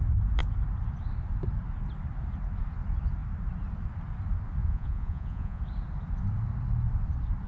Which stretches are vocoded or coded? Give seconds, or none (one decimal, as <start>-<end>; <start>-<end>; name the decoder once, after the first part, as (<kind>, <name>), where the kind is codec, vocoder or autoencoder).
4.6-5.6 (vocoder, Vocos)